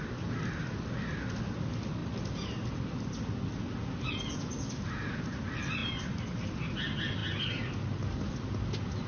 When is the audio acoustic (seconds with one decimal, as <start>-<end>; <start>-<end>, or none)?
0.0-9.1